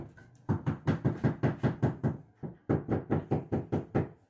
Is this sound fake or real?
real